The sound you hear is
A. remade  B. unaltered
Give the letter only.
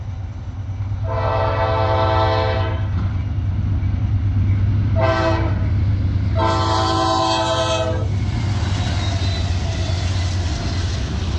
B